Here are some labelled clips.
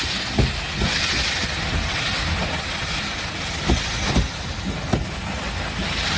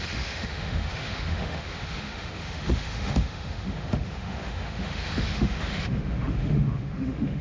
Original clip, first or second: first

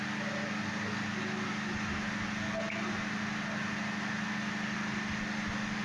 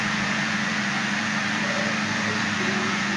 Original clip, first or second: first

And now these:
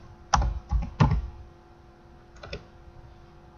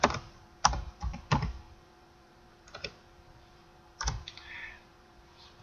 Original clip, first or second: first